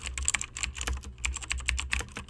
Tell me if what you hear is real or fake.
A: real